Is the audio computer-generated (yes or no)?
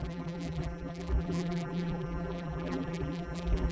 yes